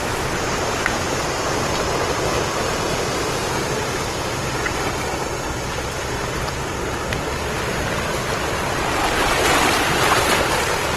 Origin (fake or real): real